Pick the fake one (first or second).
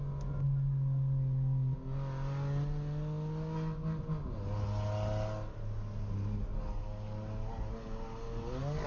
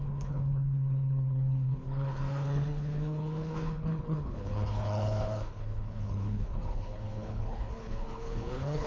second